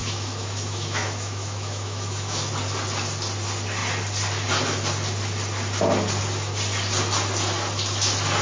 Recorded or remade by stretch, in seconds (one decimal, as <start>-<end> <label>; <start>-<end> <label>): 0.0-2.5 remade; 2.5-8.4 recorded